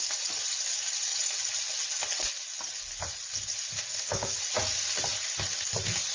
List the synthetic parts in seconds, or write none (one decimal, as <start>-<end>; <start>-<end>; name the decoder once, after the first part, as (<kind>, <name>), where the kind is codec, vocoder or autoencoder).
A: 3.9-4.4 (codec, DAC)